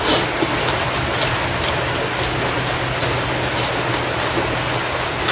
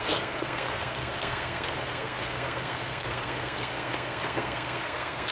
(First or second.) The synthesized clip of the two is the second